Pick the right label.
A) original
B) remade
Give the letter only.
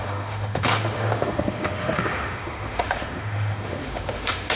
B